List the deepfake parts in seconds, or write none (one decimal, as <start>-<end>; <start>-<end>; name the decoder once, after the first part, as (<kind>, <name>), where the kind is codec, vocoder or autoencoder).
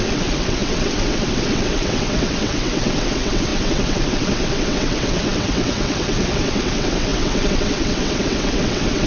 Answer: 0.0-9.1 (vocoder, WaveNeXt)